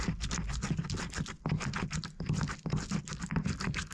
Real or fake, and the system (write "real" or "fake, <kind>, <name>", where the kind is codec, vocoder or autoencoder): real